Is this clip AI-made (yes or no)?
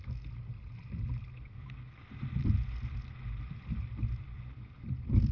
no